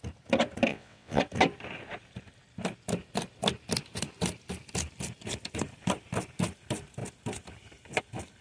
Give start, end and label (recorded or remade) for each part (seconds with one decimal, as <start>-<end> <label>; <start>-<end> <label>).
0.0-0.7 recorded; 0.7-1.2 remade; 1.2-8.4 recorded